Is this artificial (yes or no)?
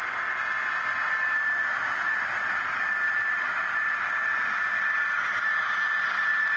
no